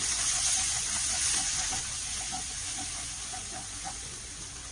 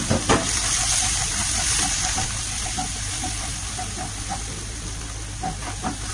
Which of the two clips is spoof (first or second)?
first